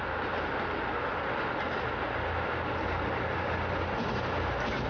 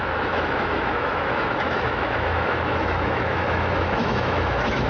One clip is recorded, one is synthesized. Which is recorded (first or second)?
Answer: first